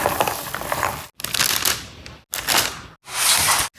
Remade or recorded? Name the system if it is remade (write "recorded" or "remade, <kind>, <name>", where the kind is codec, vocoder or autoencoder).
recorded